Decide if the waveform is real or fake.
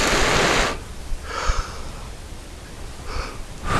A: fake